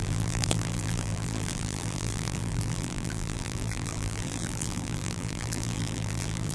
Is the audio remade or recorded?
remade